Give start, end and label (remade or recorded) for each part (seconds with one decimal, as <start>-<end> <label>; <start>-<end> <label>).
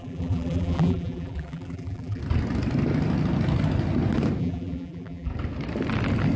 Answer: 0.0-2.2 remade; 2.2-4.4 recorded; 4.4-5.3 remade; 5.3-6.4 recorded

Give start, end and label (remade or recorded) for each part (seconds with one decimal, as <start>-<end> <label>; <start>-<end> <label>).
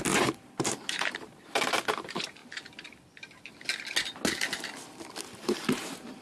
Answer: 0.0-2.4 remade; 2.4-5.2 recorded; 5.2-6.2 remade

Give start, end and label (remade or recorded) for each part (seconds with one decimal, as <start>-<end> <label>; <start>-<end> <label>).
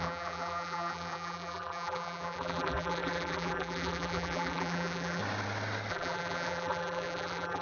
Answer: 0.0-5.2 remade; 5.2-5.9 recorded; 5.9-7.6 remade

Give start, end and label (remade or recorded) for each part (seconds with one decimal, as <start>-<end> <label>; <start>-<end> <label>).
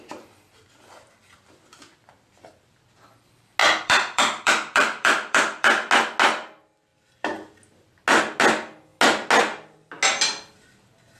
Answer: 0.0-3.6 recorded; 3.6-5.9 remade; 5.9-6.9 recorded; 6.9-7.5 remade; 7.5-11.2 recorded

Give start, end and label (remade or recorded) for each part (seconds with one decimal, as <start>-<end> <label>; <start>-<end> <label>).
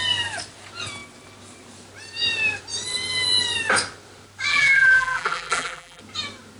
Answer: 0.0-4.5 recorded; 4.5-6.0 remade; 6.0-6.6 recorded